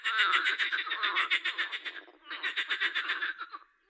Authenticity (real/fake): real